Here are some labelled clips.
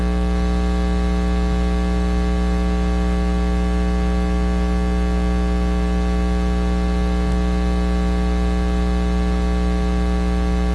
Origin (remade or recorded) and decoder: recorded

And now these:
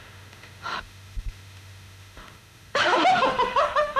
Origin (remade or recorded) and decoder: remade, autoencoder, DAC-VAE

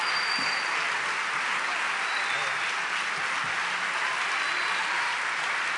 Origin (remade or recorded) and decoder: recorded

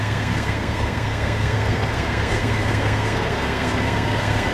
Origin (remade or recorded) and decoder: remade, codec, SNAC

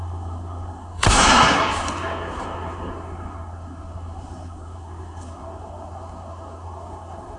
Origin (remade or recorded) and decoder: remade, codec, SNAC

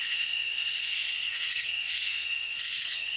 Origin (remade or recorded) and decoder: remade, codec, SNAC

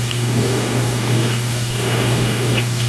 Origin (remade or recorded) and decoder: remade, codec, DAC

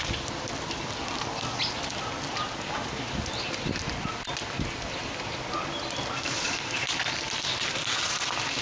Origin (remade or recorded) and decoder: recorded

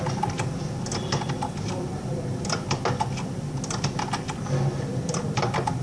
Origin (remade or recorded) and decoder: recorded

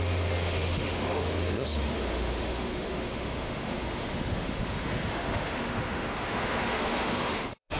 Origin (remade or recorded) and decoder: remade, autoencoder, DAC-VAE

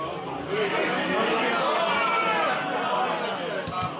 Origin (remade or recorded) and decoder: recorded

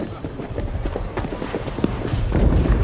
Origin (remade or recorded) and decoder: remade, vocoder, BigVGAN v2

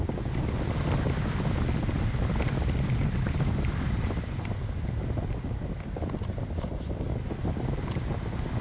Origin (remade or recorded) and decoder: recorded